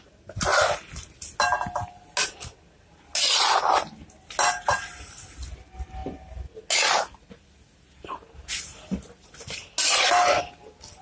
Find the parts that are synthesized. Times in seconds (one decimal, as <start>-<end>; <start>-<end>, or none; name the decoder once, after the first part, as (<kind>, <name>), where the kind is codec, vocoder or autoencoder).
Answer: none